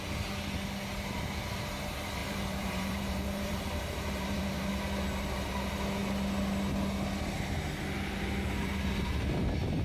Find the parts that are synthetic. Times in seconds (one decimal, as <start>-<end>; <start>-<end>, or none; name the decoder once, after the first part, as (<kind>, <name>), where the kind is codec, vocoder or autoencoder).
2.2-4.7 (vocoder, BigVGAN v2)